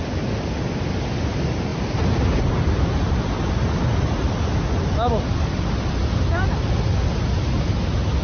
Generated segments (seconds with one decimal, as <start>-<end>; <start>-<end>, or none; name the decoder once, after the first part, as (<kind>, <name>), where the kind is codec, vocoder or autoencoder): none